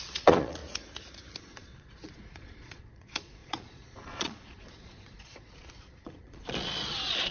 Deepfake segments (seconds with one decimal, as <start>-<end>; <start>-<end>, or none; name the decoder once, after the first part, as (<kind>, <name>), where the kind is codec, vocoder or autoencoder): 0.0-0.6 (vocoder, Vocos); 1.4-7.3